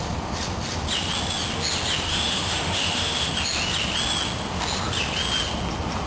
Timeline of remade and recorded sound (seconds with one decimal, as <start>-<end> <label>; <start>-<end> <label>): 0.0-2.1 recorded; 2.1-3.3 remade; 3.3-6.1 recorded